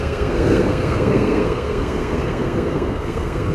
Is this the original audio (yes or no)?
no